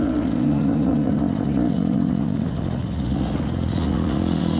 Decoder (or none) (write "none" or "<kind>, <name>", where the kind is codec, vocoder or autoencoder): vocoder, Vocos